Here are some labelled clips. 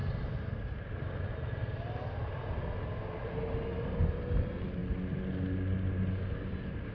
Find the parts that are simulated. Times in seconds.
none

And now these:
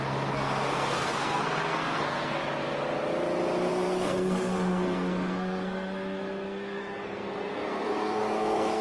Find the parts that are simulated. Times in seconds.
0.0-2.4 (codec, SNAC); 3.7-8.8